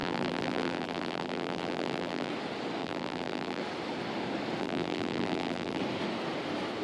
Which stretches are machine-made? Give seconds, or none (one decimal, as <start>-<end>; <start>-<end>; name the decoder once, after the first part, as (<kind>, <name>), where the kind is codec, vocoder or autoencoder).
0.0-2.3 (vocoder, BigVGAN v2); 2.8-3.6; 4.6-5.8